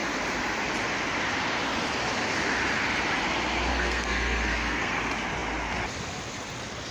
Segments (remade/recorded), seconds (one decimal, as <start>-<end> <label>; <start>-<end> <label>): 0.0-3.7 recorded; 3.7-5.0 remade; 5.0-6.9 recorded